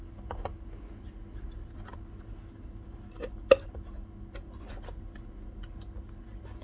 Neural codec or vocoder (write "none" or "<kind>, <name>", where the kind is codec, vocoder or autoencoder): none